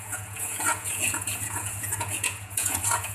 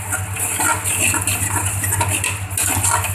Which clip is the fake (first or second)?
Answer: first